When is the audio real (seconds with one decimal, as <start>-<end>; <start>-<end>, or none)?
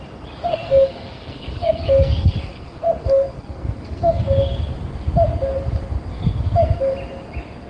0.0-0.5; 4.7-6.1; 6.9-7.7